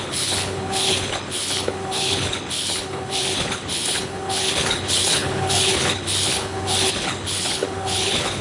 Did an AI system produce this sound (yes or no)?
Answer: yes